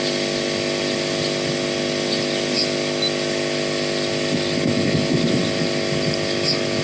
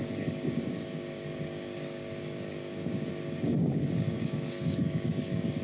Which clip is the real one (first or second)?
first